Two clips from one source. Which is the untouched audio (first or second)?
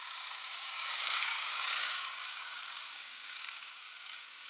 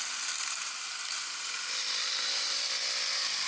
second